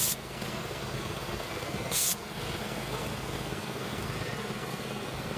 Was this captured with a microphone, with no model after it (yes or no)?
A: no